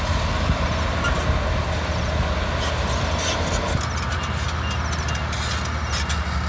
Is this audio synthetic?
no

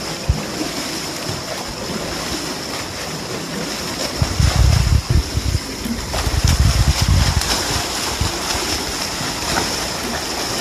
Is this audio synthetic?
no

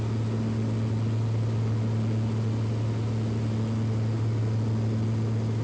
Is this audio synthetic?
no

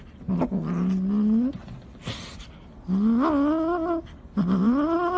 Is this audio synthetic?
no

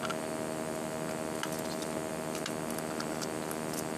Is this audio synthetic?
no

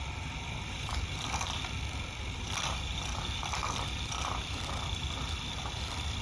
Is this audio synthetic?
no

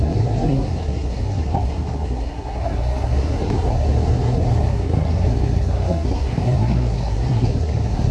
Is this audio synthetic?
yes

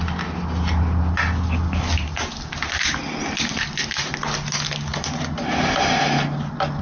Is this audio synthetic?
no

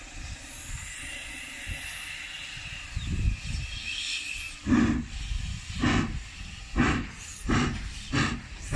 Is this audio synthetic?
no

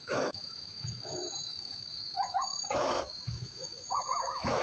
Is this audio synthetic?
yes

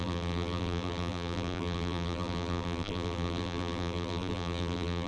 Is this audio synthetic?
yes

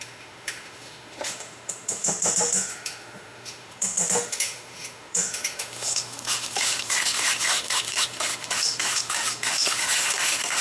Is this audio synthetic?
yes